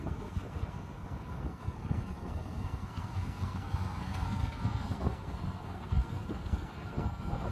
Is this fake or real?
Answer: fake